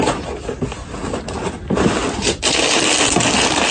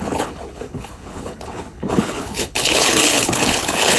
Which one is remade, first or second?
second